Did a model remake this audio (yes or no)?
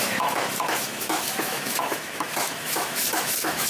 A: yes